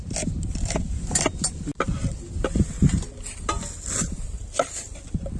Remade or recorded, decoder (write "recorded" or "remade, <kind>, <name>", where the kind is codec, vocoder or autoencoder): recorded